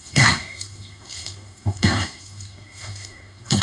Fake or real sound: fake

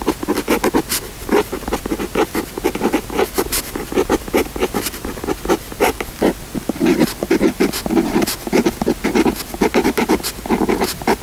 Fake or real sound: real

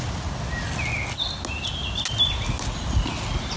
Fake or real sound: real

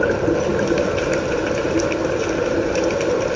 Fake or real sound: real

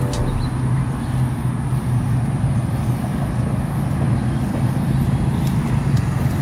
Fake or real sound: real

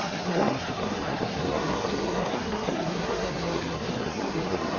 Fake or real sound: fake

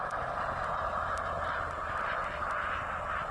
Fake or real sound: real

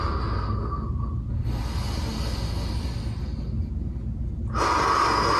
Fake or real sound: real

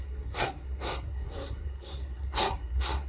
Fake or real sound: fake